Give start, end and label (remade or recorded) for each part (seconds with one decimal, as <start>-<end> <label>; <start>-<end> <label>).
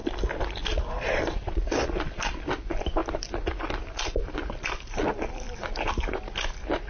0.0-6.9 recorded